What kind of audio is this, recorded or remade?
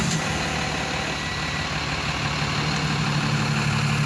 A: recorded